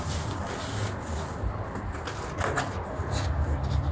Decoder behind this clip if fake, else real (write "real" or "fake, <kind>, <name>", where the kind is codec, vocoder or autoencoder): real